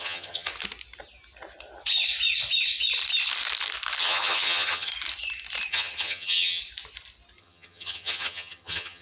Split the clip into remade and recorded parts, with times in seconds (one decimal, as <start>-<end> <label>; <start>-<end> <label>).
0.0-0.5 remade; 0.5-4.0 recorded; 4.0-4.9 remade; 4.9-5.7 recorded; 5.7-6.6 remade; 6.6-7.4 recorded; 7.4-9.0 remade